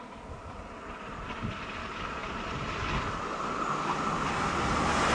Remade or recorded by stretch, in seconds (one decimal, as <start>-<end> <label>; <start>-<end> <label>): 0.0-5.1 recorded